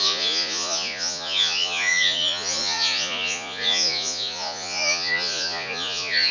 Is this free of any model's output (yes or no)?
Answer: no